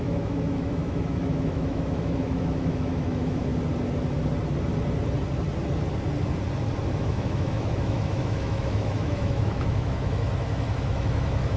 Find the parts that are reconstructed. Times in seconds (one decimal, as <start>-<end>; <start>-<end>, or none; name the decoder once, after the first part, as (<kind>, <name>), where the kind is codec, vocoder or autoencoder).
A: 0.0-3.5 (autoencoder, DAC-VAE); 6.9-11.6